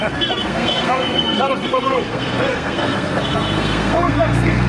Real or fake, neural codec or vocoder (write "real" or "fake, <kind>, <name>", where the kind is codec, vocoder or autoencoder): fake, codec, SNAC